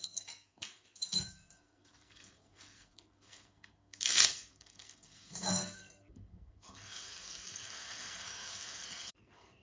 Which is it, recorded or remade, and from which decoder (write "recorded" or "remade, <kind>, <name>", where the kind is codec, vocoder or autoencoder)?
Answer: remade, codec, SNAC